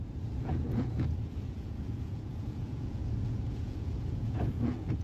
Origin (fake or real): fake